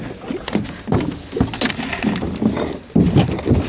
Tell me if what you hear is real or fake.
real